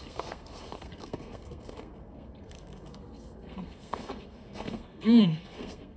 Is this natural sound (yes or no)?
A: no